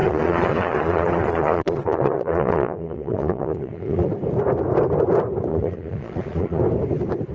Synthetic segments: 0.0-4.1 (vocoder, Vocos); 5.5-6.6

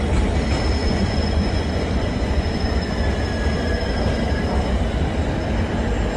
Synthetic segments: 0.8-3.1 (vocoder, Vocos)

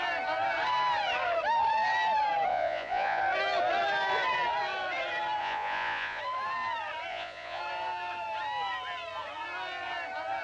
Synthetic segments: 2.5-3.2 (vocoder, Vocos); 5.4-6.2; 7.1-7.6

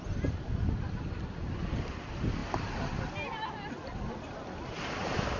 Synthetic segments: none

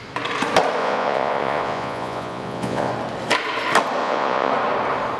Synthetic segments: 0.8-2.9 (vocoder, Vocos); 4.0-4.5

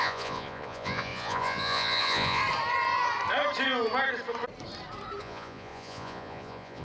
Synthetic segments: 0.0-2.4 (vocoder, Vocos); 5.2-6.8